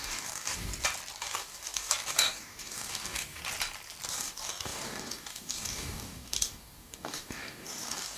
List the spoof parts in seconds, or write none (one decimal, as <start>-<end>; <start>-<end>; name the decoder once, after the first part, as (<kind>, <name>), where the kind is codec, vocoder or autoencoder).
0.0-0.7 (codec, DAC); 1.2-3.4; 4.1-8.2